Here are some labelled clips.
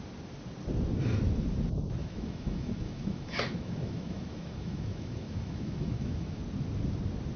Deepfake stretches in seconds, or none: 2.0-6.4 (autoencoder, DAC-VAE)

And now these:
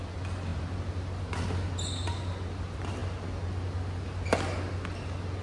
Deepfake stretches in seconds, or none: none

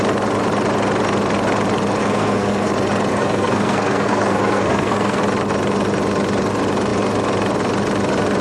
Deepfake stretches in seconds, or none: 2.0-2.7 (codec, SNAC); 3.1-5.2

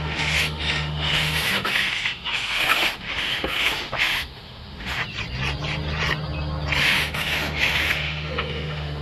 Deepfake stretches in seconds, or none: 0.0-5.0 (autoencoder, DAC-VAE); 6.8-9.0

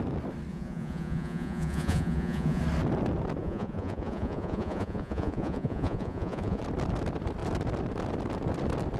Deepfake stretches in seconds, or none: 0.5-2.6 (vocoder, Vocos); 3.4-6.6